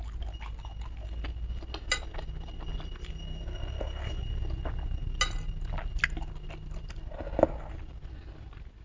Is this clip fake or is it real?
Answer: real